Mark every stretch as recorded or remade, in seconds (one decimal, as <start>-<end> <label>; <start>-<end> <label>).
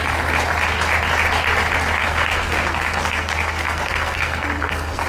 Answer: 0.0-2.0 recorded; 2.0-5.1 remade